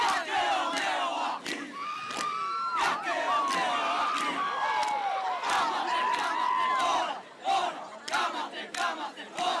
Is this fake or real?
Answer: real